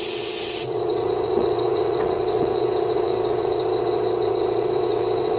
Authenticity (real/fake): fake